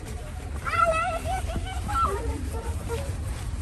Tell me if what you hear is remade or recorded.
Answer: remade